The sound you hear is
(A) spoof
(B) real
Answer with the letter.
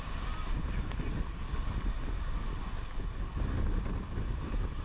B